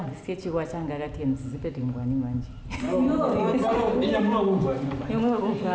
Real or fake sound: real